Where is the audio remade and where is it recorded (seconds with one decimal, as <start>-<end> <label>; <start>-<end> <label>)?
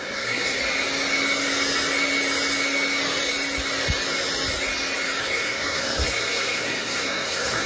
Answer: 0.0-0.6 remade; 0.6-5.2 recorded; 5.2-7.7 remade